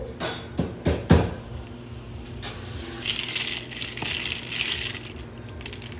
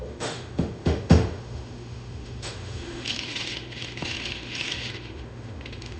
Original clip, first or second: first